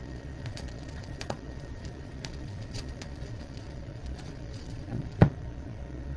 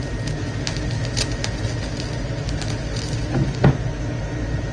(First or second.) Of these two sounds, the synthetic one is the first